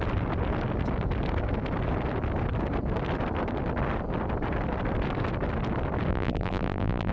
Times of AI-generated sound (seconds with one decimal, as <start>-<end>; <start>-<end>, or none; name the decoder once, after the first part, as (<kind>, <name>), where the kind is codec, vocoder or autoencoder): 6.1-7.1 (vocoder, BigVGAN v2)